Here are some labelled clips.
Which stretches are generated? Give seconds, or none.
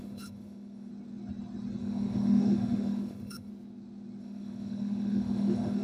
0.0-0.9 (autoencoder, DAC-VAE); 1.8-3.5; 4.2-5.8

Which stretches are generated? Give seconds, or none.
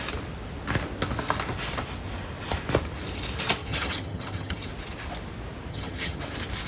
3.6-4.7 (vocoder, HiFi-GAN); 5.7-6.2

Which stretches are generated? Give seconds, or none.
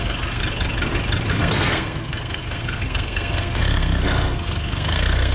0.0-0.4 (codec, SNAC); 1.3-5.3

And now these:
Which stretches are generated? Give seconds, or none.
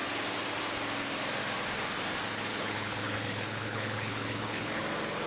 2.5-4.8 (codec, HILCodec)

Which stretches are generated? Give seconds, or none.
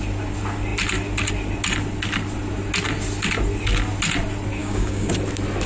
4.6-5.1 (codec, DAC)